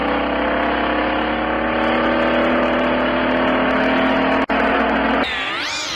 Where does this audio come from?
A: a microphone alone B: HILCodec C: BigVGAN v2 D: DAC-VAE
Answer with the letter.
A